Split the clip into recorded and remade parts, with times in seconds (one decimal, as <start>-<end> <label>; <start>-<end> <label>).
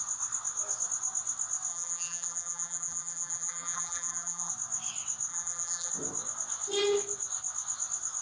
0.0-1.7 recorded; 1.7-4.5 remade; 4.5-5.3 recorded; 5.3-5.9 remade; 5.9-8.2 recorded